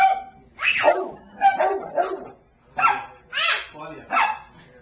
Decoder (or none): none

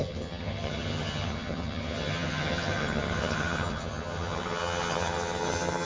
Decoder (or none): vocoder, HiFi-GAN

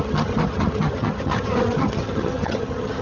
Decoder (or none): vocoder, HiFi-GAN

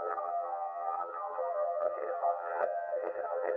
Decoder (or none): vocoder, HiFi-GAN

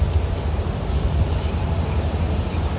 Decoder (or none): none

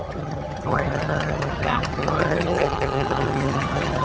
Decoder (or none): vocoder, HiFi-GAN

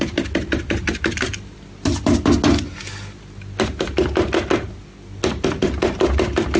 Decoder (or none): none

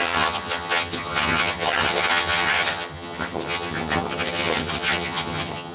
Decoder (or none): vocoder, HiFi-GAN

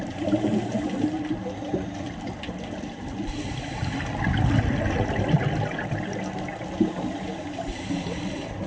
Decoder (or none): none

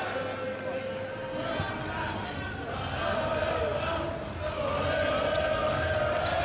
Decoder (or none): none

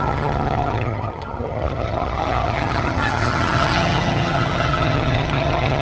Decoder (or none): vocoder, HiFi-GAN